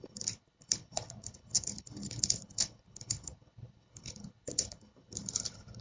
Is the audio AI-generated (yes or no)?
yes